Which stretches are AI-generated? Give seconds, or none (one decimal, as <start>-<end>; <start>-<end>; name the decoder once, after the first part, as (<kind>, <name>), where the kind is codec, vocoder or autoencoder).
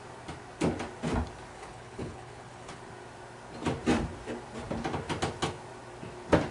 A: 1.5-2.8 (codec, HILCodec)